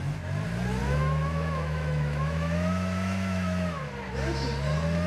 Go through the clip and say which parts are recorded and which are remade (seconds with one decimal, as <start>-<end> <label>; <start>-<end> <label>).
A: 0.0-0.8 recorded; 0.8-3.9 remade; 3.9-5.1 recorded